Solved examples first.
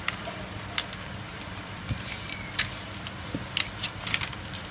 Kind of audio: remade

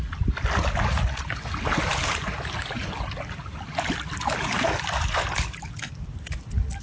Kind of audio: recorded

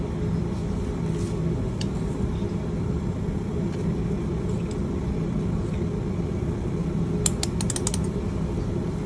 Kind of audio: recorded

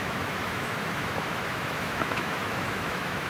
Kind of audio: remade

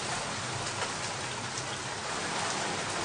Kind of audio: recorded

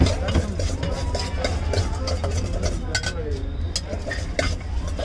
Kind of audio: recorded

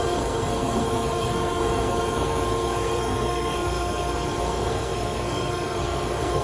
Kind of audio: remade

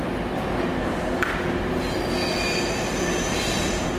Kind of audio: recorded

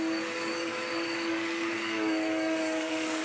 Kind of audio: remade